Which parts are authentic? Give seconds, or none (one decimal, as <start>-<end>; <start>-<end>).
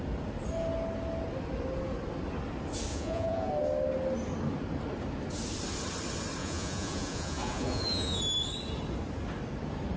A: 0.0-2.9; 3.5-6.4; 8.2-10.0